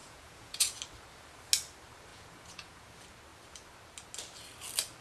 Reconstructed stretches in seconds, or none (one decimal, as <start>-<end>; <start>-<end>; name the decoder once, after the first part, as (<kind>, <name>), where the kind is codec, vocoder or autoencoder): 0.0-0.8 (vocoder, Vocos); 2.1-2.9